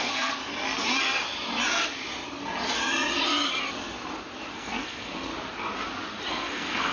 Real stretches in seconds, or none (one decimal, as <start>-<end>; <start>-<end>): 0.4-4.5; 5.3-6.3

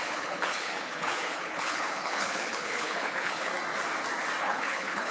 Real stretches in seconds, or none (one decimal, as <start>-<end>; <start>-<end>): 3.5-4.4